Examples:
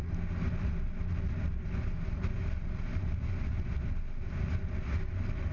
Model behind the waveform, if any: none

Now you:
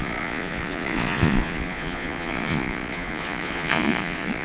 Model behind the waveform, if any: vocoder, Vocos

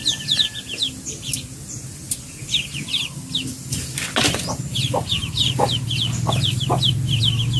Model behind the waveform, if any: none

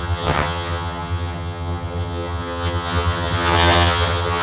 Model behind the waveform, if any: vocoder, HiFi-GAN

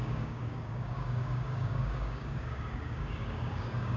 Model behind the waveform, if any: codec, DAC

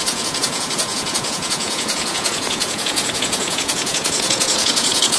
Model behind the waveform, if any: vocoder, Vocos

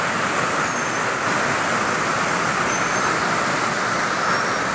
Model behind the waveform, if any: none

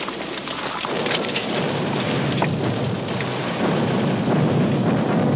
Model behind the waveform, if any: none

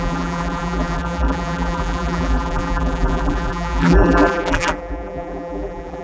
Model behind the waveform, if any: vocoder, BigVGAN v2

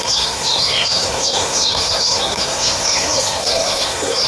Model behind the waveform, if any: codec, SNAC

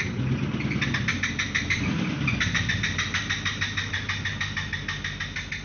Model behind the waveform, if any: none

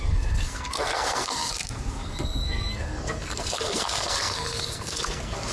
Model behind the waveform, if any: codec, SNAC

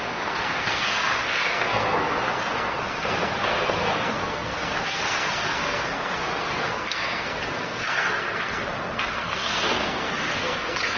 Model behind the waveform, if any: codec, SNAC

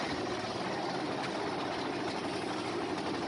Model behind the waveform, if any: none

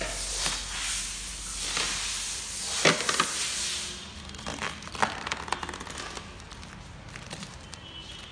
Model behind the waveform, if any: none